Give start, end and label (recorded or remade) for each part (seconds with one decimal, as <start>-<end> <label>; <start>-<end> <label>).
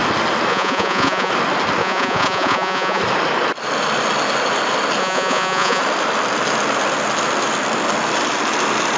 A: 0.0-0.5 recorded; 0.5-1.3 remade; 1.3-1.8 recorded; 1.8-3.0 remade; 3.0-5.0 recorded; 5.0-5.8 remade; 5.8-9.0 recorded